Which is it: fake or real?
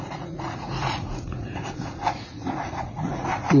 fake